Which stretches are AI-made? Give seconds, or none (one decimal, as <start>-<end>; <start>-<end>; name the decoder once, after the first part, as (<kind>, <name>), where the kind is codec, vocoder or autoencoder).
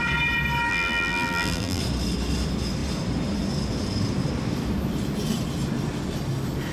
0.7-1.8 (vocoder, BigVGAN v2)